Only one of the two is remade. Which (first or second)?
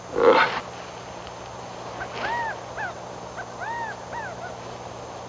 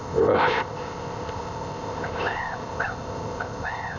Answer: second